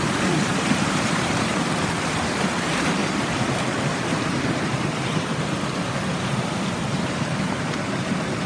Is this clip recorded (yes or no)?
no